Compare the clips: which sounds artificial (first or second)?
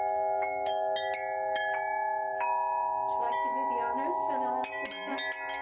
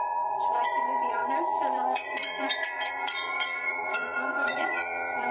second